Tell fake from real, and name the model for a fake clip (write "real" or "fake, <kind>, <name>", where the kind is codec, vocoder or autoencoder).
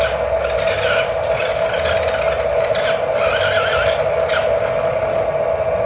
real